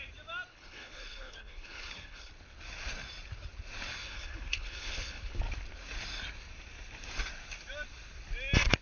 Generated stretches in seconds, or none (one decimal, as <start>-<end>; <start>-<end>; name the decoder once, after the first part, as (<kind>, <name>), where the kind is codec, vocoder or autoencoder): 0.5-2.3 (codec, HILCodec); 4.0-5.4